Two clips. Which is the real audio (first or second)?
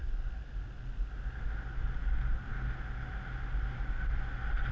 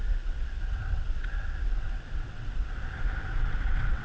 first